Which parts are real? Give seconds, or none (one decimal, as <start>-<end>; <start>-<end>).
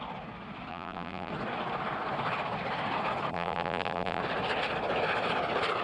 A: 0.0-0.7; 1.3-3.3; 4.2-5.8